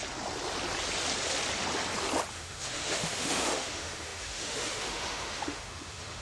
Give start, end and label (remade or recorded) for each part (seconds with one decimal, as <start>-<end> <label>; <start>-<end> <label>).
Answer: 0.0-2.3 recorded; 2.3-6.2 remade